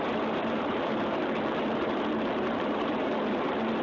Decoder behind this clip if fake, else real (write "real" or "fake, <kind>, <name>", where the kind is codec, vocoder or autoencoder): fake, vocoder, BigVGAN v2